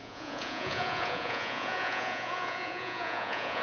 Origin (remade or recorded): remade